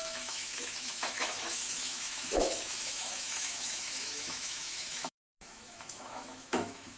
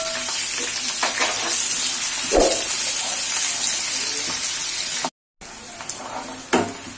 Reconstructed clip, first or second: first